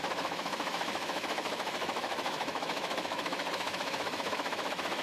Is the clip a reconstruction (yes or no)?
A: yes